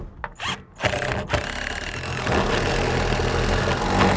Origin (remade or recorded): recorded